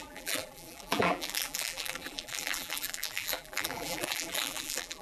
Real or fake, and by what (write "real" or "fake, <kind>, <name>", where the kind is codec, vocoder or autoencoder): fake, vocoder, BigVGAN v2